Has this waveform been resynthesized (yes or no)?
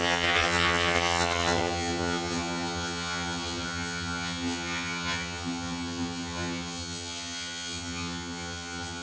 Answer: yes